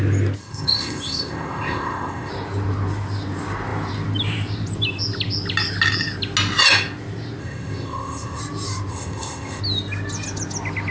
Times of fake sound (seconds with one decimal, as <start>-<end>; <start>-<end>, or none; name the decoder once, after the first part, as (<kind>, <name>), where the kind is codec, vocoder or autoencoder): 0.4-2.3 (codec, ZipCodec); 7.4-8.4; 8.9-9.6